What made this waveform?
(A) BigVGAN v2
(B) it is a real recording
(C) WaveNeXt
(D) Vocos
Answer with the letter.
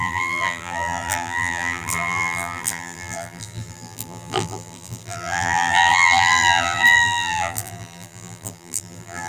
A